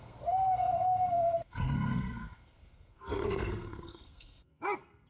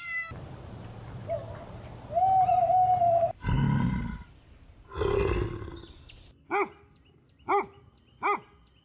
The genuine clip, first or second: second